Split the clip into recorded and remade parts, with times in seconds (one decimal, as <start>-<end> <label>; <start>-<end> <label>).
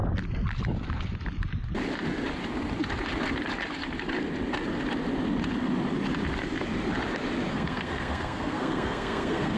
0.0-7.5 recorded; 7.5-9.6 remade